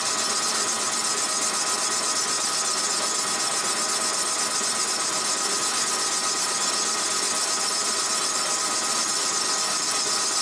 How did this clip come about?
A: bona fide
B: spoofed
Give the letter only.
B